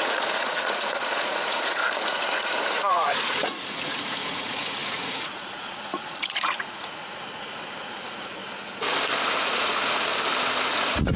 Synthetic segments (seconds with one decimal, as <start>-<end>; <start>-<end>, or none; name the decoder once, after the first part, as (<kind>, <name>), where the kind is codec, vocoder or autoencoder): 0.0-8.4 (vocoder, Vocos); 9.2-10.1; 10.6-11.2